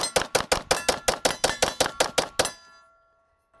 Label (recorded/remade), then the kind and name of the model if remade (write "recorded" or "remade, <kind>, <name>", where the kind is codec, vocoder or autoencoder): recorded